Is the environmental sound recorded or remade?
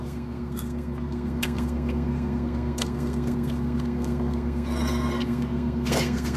remade